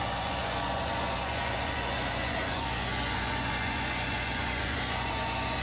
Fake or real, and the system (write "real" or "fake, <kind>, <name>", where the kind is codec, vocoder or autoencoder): fake, vocoder, Vocos